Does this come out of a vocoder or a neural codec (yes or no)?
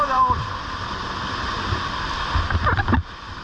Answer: no